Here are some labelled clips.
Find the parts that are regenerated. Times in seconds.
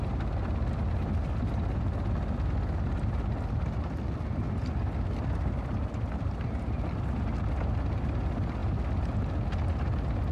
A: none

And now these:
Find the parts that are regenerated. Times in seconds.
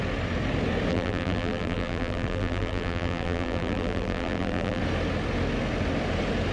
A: 0.9-4.8 (vocoder, BigVGAN v2)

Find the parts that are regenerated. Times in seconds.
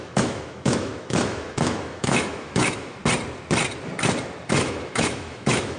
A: 0.0-3.0 (autoencoder, DAC-VAE); 4.5-5.8